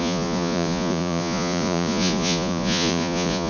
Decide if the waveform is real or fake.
fake